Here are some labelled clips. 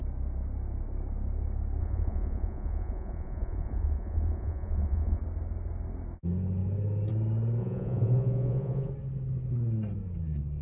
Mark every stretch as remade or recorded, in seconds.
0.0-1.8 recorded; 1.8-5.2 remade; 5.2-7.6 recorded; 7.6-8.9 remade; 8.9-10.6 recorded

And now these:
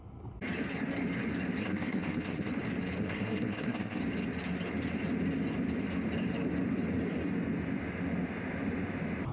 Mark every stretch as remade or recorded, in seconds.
0.0-1.6 recorded; 1.6-2.5 remade; 2.5-3.0 recorded; 3.0-4.0 remade; 4.0-9.3 recorded

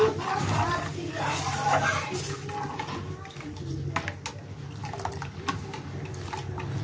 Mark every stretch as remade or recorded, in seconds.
0.0-6.8 recorded

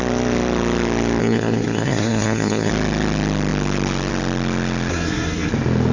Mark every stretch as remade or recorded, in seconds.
0.0-1.2 recorded; 1.2-2.7 remade; 2.7-4.9 recorded; 4.9-5.5 remade; 5.5-5.9 recorded

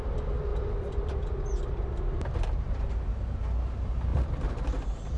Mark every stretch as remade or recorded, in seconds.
0.0-0.5 recorded; 0.5-2.8 remade; 2.8-5.2 recorded